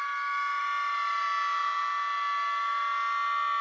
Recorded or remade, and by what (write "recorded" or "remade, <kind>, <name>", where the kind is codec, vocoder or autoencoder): recorded